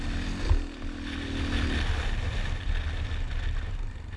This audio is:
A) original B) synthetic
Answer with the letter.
A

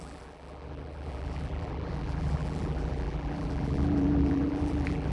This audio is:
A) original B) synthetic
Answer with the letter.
B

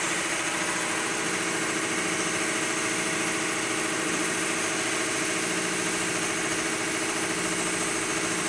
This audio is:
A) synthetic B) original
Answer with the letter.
B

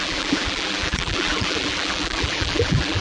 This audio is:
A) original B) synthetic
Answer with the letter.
B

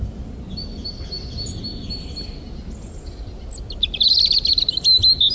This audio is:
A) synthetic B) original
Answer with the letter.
B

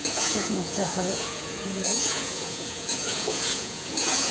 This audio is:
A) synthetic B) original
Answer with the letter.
A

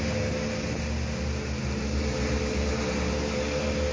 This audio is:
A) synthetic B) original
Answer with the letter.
B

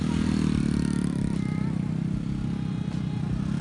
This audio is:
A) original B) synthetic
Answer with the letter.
A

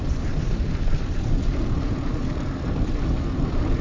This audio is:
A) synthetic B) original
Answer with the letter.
B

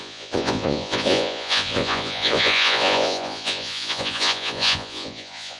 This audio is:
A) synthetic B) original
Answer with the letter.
A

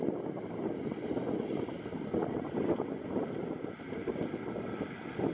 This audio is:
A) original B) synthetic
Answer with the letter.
A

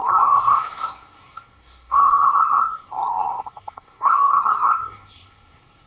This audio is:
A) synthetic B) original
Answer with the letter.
A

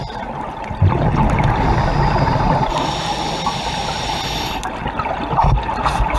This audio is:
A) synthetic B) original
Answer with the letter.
B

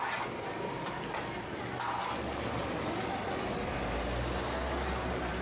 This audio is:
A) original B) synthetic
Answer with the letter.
A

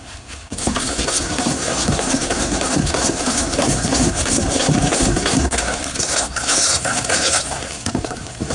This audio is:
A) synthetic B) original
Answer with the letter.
A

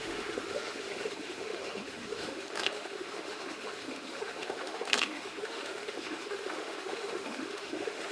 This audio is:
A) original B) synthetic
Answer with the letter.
B